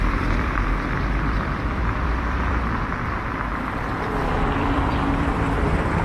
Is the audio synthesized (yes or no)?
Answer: yes